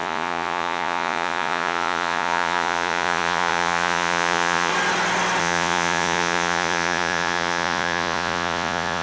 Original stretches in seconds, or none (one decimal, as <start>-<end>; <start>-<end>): 4.7-5.4